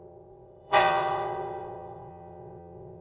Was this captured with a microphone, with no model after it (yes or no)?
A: no